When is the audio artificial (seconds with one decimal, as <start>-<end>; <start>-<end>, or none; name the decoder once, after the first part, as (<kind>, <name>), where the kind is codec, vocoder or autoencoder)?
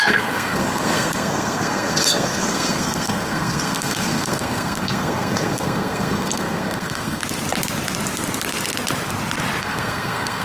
0.0-7.2 (codec, SNAC); 9.6-10.4